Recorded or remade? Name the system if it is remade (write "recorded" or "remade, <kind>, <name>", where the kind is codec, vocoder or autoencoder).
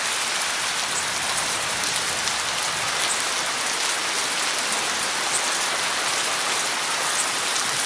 recorded